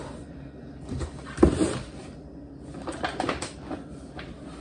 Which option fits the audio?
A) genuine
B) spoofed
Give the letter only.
A